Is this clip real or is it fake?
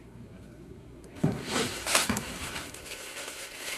fake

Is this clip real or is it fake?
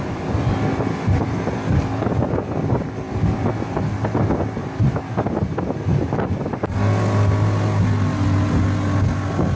real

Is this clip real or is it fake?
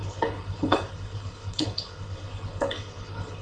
fake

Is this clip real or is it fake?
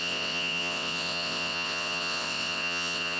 fake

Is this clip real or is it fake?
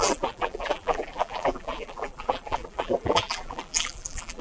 fake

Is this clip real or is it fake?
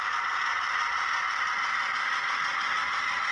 real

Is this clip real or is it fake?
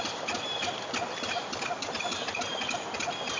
real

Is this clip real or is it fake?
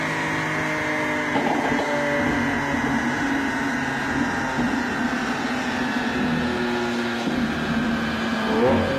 real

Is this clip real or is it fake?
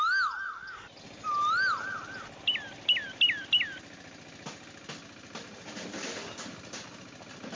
real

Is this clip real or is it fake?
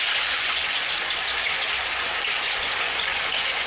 fake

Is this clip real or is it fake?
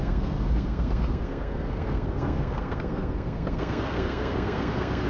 fake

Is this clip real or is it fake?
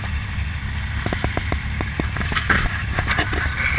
real